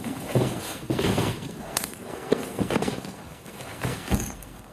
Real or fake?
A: fake